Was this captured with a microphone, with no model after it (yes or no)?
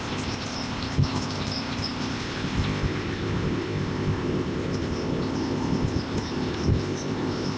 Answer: no